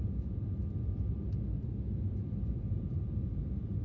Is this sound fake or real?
real